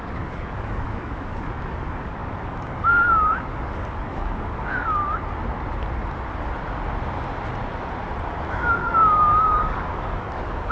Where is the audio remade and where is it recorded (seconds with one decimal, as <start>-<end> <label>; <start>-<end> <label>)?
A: 0.0-5.0 remade; 5.0-8.5 recorded; 8.5-10.7 remade